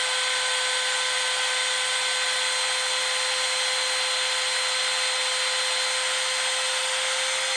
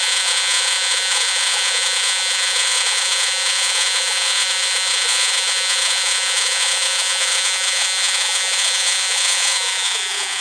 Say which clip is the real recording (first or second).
first